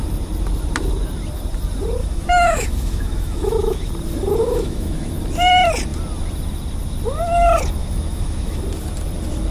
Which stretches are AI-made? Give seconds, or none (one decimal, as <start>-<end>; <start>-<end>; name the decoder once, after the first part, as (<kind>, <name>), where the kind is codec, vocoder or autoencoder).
2.0-3.9 (autoencoder, DAC-VAE); 4.4-5.1; 7.8-8.6